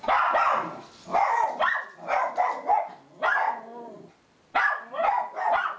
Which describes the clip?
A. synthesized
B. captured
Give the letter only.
B